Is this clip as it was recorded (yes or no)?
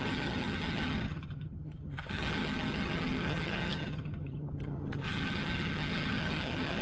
no